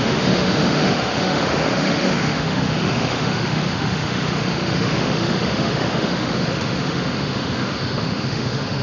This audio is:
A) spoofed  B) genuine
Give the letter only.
A